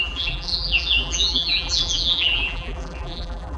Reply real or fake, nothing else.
fake